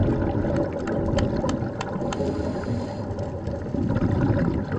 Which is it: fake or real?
real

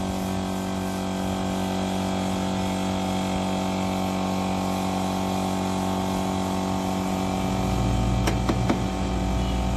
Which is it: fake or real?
real